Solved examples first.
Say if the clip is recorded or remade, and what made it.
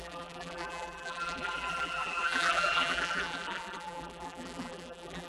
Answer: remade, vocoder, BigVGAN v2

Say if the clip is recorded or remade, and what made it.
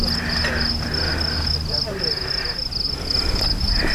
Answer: recorded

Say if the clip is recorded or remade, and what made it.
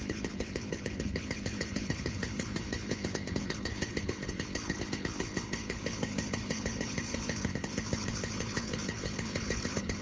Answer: remade, codec, HILCodec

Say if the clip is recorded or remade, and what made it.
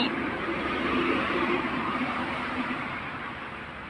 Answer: remade, vocoder, BigVGAN v2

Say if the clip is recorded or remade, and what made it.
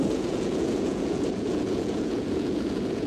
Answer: remade, vocoder, Vocos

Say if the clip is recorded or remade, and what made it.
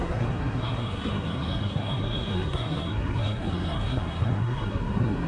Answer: remade, codec, SNAC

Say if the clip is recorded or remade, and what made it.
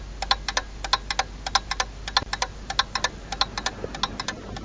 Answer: recorded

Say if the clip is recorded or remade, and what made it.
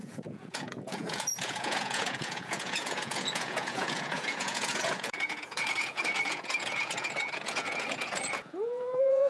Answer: remade, vocoder, Vocos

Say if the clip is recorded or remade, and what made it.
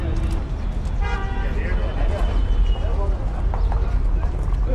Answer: recorded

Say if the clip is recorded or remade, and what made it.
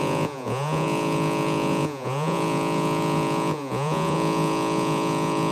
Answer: remade, vocoder, Vocos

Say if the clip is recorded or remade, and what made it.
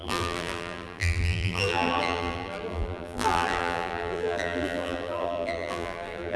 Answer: remade, vocoder, BigVGAN v2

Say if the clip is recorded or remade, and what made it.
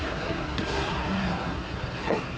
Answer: remade, codec, SNAC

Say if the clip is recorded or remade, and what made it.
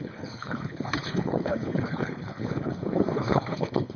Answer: remade, codec, HILCodec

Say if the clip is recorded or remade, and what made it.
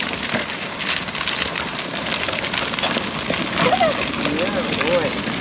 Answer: recorded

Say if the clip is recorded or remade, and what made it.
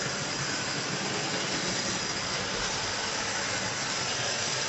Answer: recorded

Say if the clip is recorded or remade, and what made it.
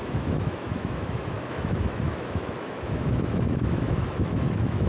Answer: remade, autoencoder, DAC-VAE